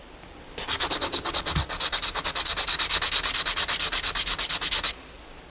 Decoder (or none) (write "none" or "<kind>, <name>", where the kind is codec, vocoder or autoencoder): vocoder, BigVGAN v2